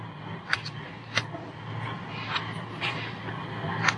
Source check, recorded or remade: recorded